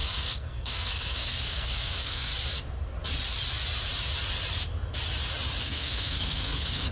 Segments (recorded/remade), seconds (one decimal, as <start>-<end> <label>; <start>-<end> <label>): 0.0-2.3 remade; 2.3-5.6 recorded; 5.6-6.9 remade